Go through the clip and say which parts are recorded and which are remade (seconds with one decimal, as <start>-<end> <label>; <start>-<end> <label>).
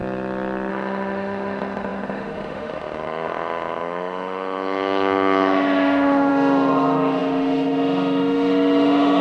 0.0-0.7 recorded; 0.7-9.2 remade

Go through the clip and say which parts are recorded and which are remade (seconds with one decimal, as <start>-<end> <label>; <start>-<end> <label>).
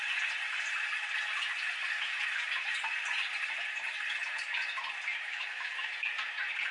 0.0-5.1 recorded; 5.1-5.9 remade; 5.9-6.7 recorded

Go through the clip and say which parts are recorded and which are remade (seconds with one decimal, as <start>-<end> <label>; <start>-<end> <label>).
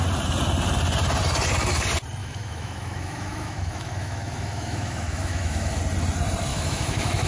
0.0-2.2 recorded; 2.2-5.8 remade; 5.8-6.5 recorded; 6.5-7.3 remade